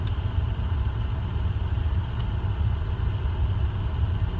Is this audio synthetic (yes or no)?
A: no